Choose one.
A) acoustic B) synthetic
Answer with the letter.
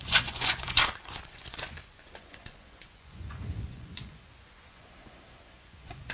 B